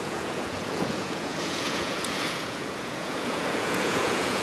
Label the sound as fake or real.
fake